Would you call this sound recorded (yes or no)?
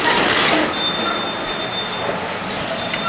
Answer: yes